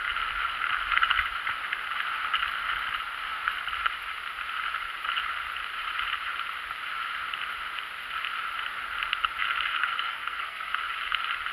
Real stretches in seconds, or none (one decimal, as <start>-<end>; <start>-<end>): 0.0-9.7; 10.7-11.5